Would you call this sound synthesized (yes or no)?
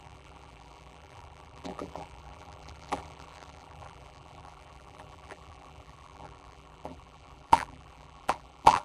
yes